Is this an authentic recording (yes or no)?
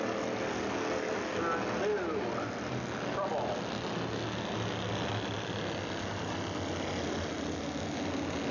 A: yes